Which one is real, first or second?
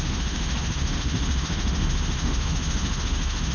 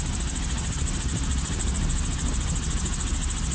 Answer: second